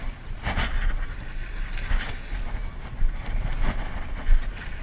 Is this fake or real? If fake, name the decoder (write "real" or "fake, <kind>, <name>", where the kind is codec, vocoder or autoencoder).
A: real